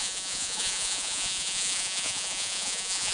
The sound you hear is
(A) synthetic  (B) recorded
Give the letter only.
A